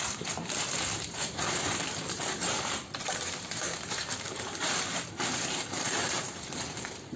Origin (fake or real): fake